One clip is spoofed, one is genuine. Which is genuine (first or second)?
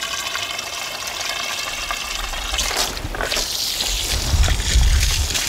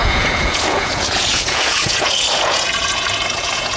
first